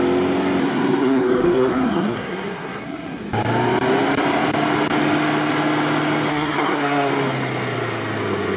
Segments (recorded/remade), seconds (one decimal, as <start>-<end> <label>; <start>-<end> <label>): 0.0-0.6 recorded; 0.6-3.2 remade; 3.2-6.3 recorded; 6.3-7.1 remade; 7.1-8.6 recorded